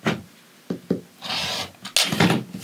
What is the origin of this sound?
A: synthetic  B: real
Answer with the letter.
B